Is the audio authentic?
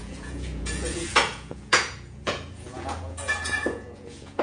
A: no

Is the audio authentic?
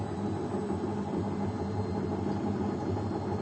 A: yes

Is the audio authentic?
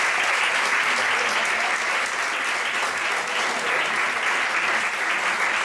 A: yes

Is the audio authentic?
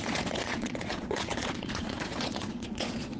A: no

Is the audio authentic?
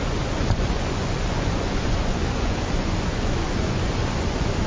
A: no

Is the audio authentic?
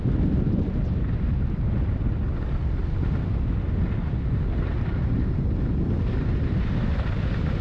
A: yes